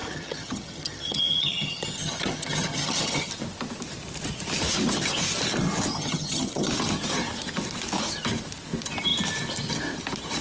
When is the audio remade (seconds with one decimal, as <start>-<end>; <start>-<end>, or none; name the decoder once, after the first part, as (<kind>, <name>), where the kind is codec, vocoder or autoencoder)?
0.0-3.3 (vocoder, HiFi-GAN); 5.9-6.7